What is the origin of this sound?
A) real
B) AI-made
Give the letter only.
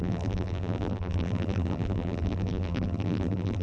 B